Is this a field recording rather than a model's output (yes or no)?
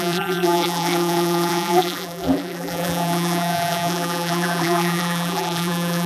no